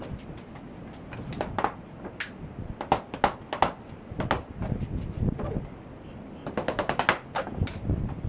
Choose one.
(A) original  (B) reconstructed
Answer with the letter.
A